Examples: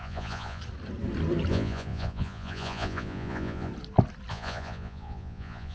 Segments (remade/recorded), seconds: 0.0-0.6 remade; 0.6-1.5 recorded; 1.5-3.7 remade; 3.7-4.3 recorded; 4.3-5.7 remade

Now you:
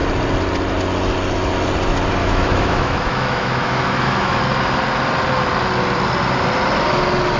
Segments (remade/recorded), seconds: 0.0-2.2 recorded; 2.2-4.4 remade; 4.4-7.4 recorded

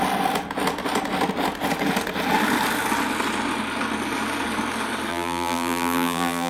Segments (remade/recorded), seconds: 0.0-5.1 recorded; 5.1-6.5 remade

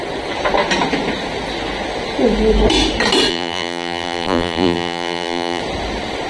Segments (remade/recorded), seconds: 0.0-3.3 recorded; 3.3-5.6 remade; 5.6-6.3 recorded

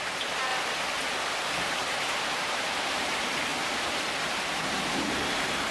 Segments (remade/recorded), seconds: 0.0-0.5 remade; 0.5-1.1 recorded; 1.1-5.7 remade

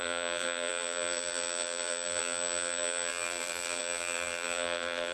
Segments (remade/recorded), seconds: 0.0-5.1 remade

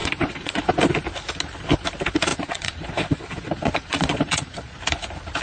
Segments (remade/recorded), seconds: 0.0-0.6 remade; 0.6-2.3 recorded; 2.3-4.8 remade; 4.8-5.4 recorded